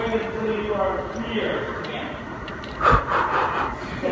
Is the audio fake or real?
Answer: fake